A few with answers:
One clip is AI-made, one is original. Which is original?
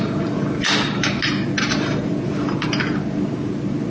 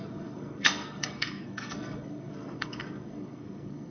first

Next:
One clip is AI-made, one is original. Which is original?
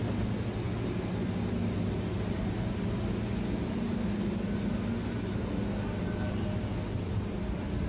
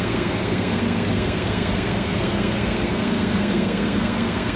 first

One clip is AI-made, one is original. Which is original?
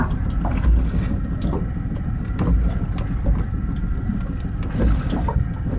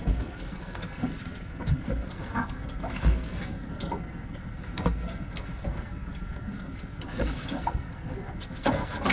first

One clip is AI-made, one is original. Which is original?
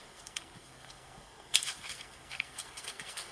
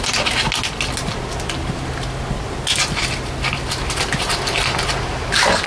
second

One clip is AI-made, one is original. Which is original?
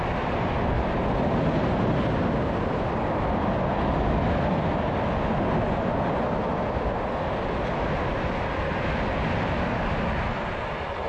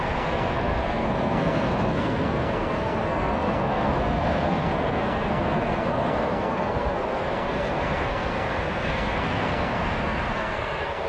first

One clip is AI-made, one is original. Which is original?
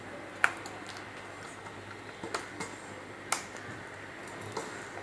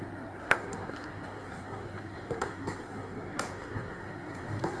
first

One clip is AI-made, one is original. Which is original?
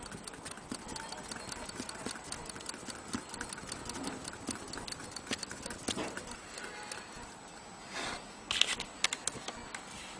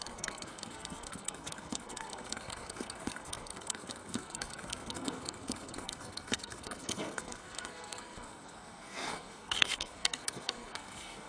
first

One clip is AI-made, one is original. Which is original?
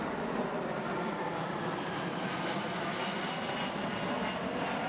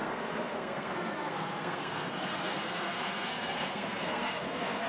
first